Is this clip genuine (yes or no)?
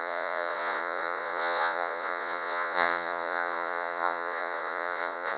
no